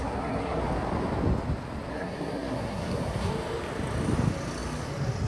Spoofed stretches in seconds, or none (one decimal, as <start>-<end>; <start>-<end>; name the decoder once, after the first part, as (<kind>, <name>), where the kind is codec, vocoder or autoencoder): 0.0-0.6 (codec, SNAC); 1.9-3.3